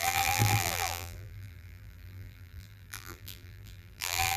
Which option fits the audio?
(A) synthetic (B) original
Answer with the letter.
A